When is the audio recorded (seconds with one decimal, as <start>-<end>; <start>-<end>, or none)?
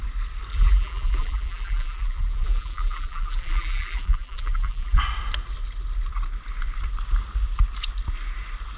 0.0-0.5; 5.0-8.8